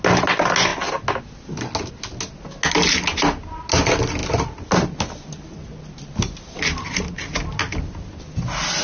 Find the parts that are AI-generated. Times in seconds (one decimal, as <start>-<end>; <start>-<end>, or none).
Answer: none